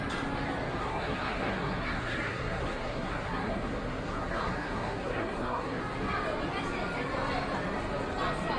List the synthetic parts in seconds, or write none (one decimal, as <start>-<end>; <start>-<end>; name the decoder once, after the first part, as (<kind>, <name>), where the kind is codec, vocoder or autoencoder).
0.8-5.8 (codec, SNAC)